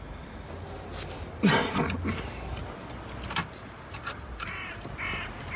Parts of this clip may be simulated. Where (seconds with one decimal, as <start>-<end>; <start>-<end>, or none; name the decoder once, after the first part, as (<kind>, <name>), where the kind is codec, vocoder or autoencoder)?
3.4-4.9 (vocoder, BigVGAN v2)